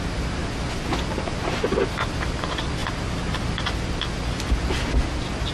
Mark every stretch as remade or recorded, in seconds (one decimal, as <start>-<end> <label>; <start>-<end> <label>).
0.0-5.5 recorded